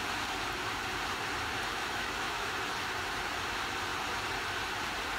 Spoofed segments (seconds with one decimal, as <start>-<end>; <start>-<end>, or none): 1.7-2.5